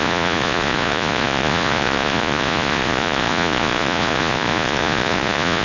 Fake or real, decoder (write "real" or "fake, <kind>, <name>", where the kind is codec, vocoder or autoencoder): fake, vocoder, Vocos